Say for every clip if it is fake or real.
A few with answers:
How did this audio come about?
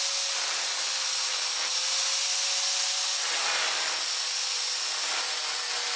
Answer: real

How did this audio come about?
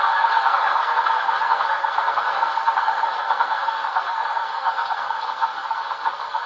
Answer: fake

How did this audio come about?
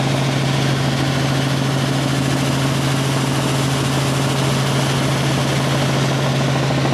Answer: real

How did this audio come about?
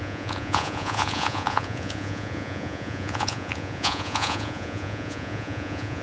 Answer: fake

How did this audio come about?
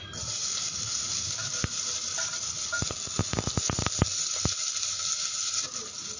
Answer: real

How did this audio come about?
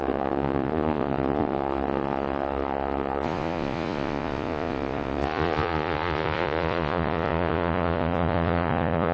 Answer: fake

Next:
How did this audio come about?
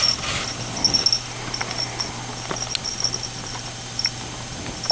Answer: real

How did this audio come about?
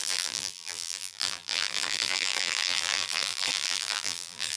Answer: fake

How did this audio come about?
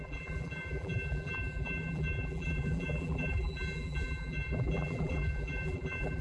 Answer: fake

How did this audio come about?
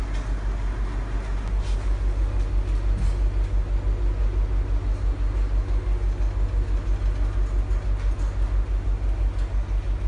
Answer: real